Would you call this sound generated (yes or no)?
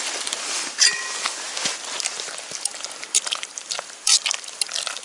yes